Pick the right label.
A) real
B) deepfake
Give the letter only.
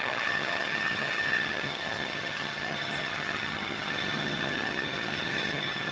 B